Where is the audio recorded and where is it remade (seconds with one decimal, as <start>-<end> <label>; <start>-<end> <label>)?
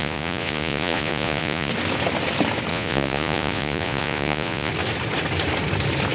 0.0-1.7 remade; 1.7-2.7 recorded; 2.7-4.7 remade; 4.7-6.1 recorded